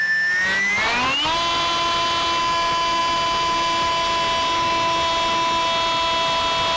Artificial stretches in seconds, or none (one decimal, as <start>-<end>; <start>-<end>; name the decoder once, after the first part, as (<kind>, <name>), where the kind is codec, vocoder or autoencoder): none